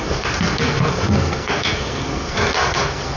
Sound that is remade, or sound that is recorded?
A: remade